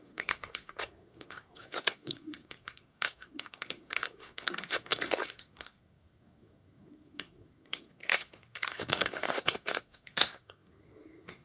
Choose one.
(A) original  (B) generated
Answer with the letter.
B